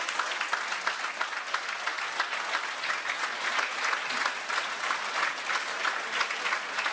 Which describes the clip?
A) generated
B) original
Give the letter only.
B